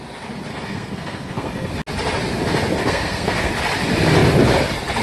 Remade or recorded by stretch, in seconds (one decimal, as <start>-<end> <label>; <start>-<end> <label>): 0.0-0.5 recorded; 0.5-1.7 remade; 1.7-2.8 recorded; 2.8-3.5 remade; 3.5-5.0 recorded

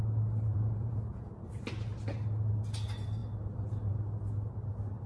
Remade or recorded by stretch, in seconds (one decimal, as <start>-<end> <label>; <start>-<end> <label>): 0.0-0.5 recorded; 0.5-1.3 remade; 1.3-5.1 recorded

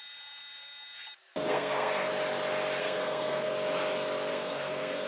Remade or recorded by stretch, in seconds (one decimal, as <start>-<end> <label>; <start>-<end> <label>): 0.0-1.5 recorded; 1.5-2.1 remade; 2.1-2.8 recorded; 2.8-3.5 remade; 3.5-4.3 recorded; 4.3-5.1 remade